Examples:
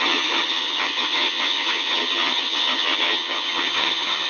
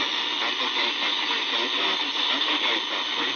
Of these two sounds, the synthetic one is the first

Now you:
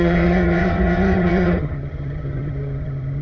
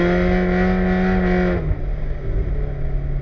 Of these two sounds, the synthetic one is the first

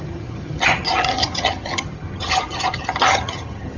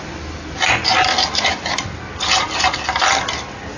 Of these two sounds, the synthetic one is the first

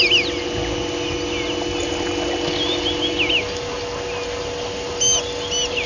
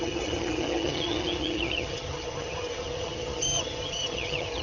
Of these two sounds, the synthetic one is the second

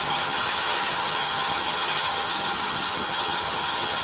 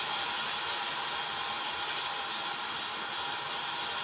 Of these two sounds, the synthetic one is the first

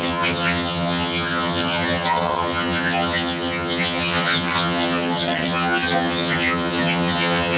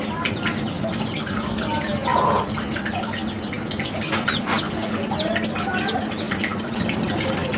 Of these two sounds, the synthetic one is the first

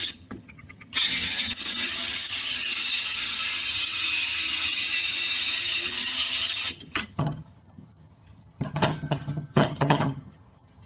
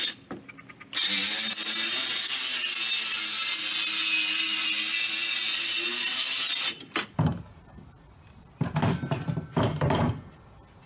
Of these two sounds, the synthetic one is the first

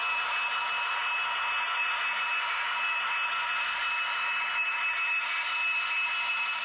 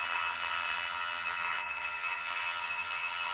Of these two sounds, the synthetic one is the second